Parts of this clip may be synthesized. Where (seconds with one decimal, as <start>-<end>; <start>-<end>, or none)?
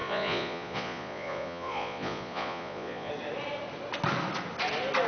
0.0-3.1